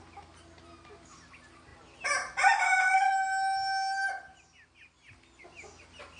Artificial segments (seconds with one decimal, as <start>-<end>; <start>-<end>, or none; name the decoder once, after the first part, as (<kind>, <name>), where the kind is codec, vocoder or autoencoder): none